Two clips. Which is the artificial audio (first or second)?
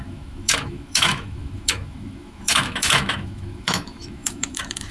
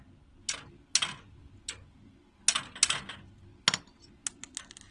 first